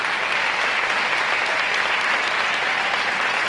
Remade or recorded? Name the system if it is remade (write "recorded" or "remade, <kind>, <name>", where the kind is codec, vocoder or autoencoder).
recorded